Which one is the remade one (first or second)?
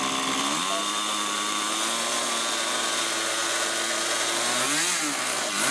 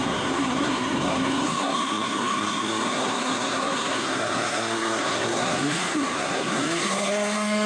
second